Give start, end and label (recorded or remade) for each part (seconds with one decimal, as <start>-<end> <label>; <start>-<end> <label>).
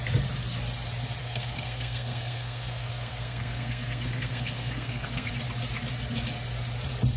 0.0-1.2 recorded; 1.2-5.3 remade; 5.3-7.2 recorded